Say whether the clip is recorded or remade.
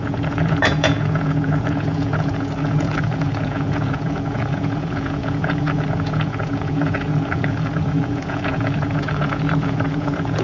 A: remade